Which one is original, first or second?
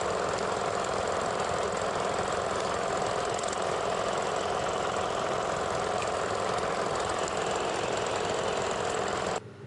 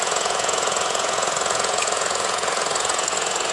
first